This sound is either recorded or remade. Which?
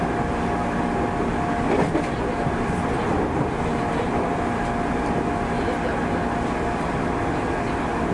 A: recorded